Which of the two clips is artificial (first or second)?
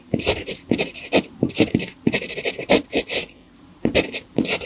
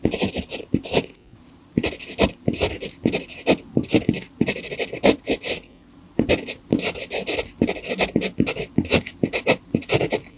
first